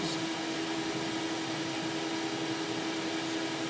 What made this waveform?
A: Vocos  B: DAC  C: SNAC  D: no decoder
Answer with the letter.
D